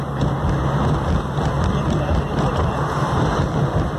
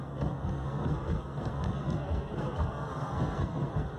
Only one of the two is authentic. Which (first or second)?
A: first